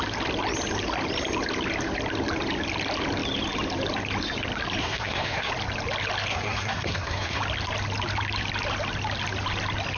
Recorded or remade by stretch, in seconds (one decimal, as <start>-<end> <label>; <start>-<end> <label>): 0.0-4.8 recorded; 4.8-5.5 remade; 5.5-6.3 recorded; 6.3-7.4 remade; 7.4-10.0 recorded